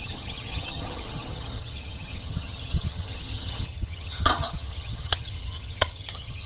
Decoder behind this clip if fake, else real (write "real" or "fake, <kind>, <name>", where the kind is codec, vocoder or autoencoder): fake, vocoder, HiFi-GAN